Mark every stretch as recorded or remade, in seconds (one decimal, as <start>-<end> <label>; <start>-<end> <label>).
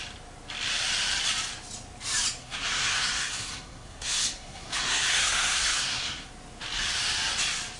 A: 0.0-2.4 recorded; 2.4-6.3 remade; 6.3-7.8 recorded